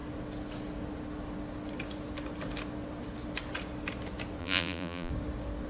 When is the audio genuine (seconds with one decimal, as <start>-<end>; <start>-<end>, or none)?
0.0-4.4; 5.1-5.7